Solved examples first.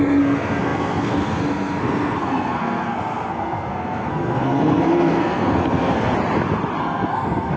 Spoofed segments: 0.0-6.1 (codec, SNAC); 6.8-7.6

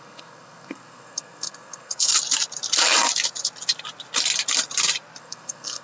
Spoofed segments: 0.0-2.1 (codec, SNAC); 5.2-5.8

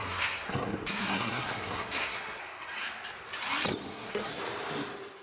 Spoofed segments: 0.0-2.4 (codec, SNAC); 3.9-4.4

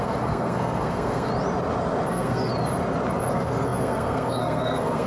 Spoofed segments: 0.0-1.3 (codec, SNAC); 2.1-2.5; 3.3-5.1